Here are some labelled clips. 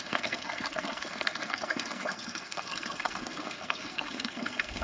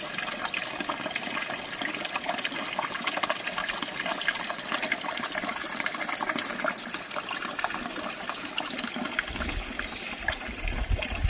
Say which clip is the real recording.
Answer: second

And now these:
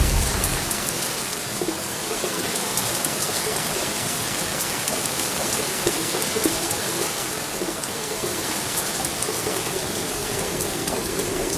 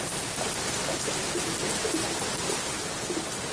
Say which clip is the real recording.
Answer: second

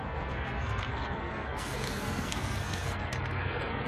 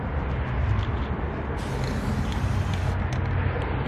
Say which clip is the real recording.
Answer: second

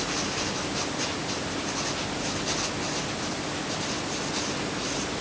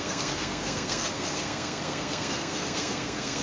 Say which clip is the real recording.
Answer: first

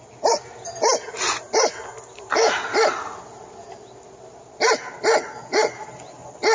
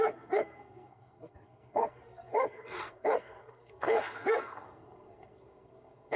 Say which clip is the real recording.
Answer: first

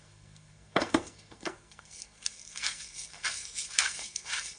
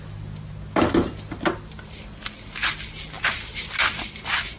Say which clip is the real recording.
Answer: second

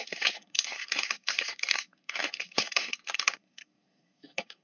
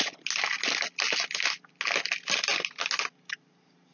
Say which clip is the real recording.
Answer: second